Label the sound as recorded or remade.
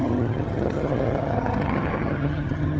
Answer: remade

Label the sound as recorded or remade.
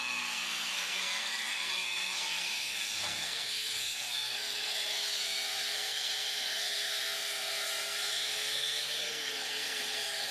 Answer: remade